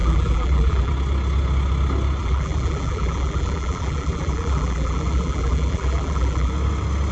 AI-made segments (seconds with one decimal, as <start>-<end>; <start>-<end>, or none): 0.0-0.9; 2.2-6.5